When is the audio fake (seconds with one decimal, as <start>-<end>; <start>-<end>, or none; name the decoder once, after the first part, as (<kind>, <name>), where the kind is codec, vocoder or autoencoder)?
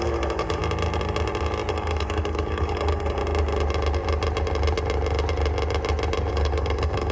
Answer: 0.0-0.6 (codec, DAC); 1.7-3.2; 6.3-7.1